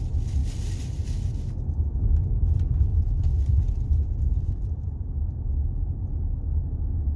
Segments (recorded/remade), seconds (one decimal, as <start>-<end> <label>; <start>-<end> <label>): 0.0-2.9 recorded; 2.9-5.5 remade; 5.5-7.2 recorded